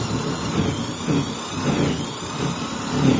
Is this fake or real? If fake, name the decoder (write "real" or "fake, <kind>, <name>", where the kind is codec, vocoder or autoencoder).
real